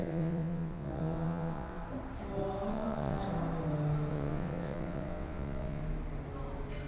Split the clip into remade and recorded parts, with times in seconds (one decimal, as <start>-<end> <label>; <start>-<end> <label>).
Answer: 0.0-1.8 remade; 1.8-2.7 recorded; 2.7-3.2 remade; 3.2-4.1 recorded; 4.1-5.8 remade; 5.8-6.9 recorded